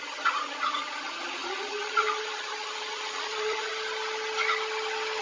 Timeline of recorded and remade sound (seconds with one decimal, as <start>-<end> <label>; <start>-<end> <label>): 0.0-3.7 remade; 3.7-5.2 recorded